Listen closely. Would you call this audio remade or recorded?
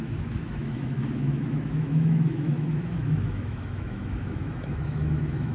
remade